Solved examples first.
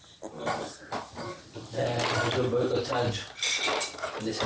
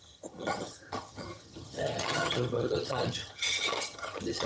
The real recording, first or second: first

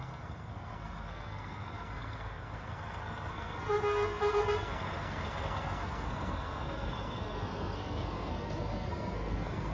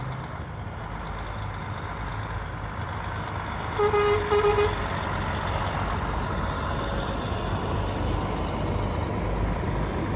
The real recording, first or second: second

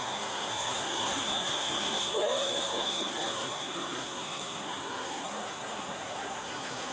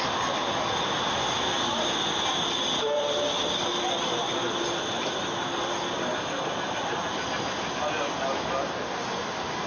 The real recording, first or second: second